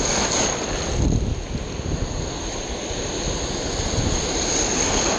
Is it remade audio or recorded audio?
recorded